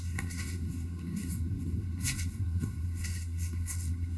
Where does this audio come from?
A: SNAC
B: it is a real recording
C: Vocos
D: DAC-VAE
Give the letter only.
A